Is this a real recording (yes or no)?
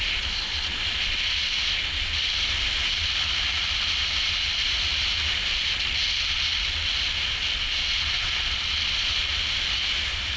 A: yes